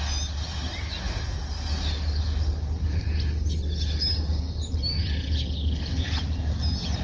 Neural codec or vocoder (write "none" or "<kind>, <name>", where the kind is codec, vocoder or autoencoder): none